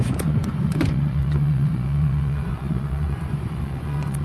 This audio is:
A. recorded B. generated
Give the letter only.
B